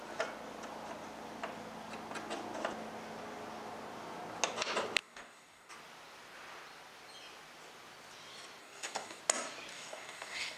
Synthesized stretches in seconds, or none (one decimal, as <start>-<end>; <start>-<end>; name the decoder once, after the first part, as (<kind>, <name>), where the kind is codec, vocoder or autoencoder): 5.0-5.7 (codec, DAC); 8.6-9.2; 9.7-10.6